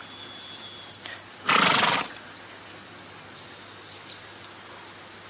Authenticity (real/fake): real